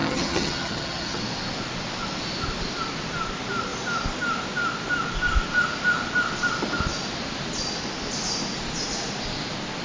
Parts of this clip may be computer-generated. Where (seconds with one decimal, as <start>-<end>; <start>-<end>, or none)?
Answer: 0.0-1.2